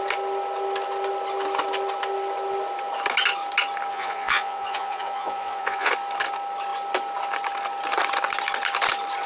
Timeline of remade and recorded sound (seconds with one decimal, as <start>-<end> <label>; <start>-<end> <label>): 0.0-3.9 recorded; 3.9-5.9 remade; 5.9-9.3 recorded